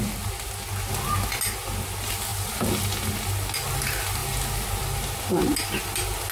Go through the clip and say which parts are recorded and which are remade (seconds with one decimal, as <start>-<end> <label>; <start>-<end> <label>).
0.0-6.3 recorded